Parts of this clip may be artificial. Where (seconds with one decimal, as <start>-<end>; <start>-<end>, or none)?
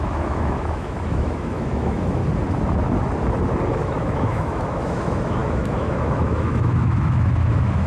0.0-2.2; 3.7-7.9